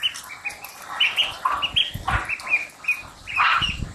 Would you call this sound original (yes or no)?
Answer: yes